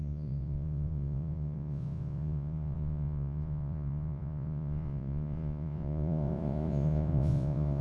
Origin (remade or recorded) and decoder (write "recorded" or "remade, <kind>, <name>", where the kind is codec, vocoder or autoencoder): remade, vocoder, Vocos